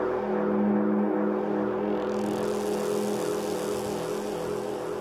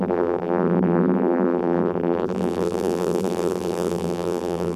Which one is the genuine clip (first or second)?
first